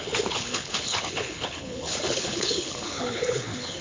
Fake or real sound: fake